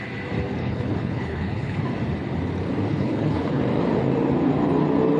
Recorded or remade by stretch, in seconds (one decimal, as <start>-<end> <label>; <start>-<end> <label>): 0.0-0.6 recorded; 0.6-1.8 remade; 1.8-2.9 recorded; 2.9-3.6 remade; 3.6-5.2 recorded